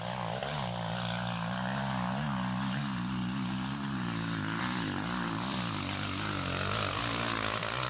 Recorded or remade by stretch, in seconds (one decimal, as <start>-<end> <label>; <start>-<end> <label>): 0.0-7.9 recorded